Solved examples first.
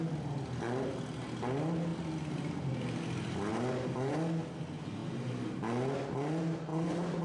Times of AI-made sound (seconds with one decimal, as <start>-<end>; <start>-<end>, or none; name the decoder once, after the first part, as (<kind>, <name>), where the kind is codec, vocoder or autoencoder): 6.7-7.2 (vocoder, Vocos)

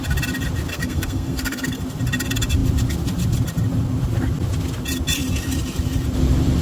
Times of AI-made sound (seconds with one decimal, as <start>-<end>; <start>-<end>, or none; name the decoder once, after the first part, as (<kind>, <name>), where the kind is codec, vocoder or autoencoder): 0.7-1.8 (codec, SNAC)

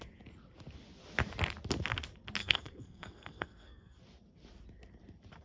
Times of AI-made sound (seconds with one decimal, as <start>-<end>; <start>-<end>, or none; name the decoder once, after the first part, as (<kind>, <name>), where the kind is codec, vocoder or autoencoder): 2.4-4.0 (codec, SNAC)

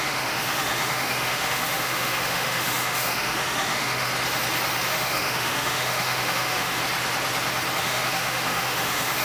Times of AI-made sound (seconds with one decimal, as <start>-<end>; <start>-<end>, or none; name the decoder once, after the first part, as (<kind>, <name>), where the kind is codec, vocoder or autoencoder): 0.0-4.1 (autoencoder, DAC-VAE); 4.9-6.8; 7.8-9.2

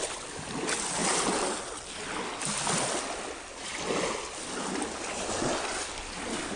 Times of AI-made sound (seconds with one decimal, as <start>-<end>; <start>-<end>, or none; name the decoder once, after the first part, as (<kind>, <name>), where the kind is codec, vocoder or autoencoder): none

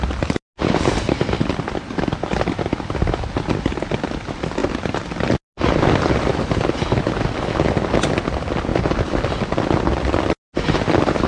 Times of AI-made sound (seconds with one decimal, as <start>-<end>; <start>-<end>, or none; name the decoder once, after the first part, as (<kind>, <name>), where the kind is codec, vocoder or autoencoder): none